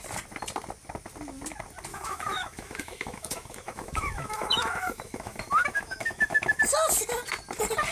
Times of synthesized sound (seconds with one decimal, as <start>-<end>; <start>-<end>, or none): 1.9-6.6